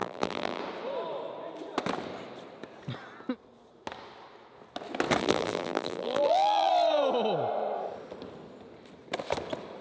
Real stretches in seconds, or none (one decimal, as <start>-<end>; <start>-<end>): 0.6-5.2; 6.7-9.8